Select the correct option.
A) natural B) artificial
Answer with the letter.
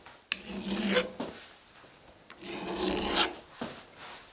A